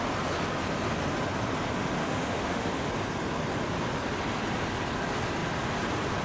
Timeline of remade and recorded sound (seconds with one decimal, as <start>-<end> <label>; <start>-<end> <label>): 0.0-2.0 recorded; 2.0-2.9 remade; 2.9-6.2 recorded